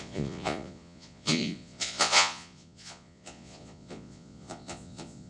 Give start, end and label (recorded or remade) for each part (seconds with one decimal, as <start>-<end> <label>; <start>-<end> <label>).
0.0-5.3 remade